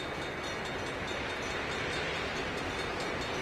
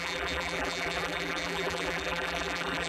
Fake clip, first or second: second